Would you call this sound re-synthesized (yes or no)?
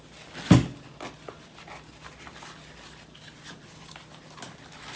no